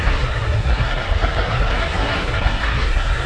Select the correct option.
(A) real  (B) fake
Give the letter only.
B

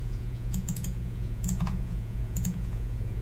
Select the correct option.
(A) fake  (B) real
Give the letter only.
A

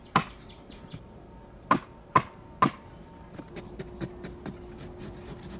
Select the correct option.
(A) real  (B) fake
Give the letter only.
A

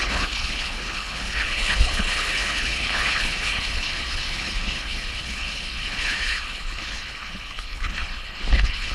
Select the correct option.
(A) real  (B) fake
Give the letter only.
B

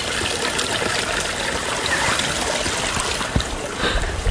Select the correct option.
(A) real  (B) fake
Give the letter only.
B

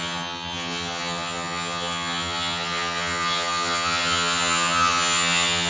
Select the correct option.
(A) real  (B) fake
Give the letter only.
B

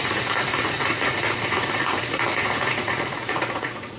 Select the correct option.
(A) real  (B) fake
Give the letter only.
B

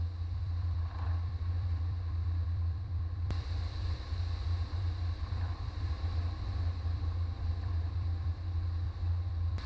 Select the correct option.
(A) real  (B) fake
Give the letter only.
B